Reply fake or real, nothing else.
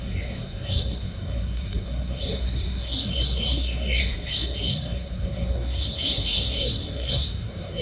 fake